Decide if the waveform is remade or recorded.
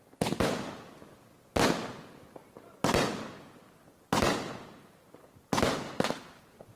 recorded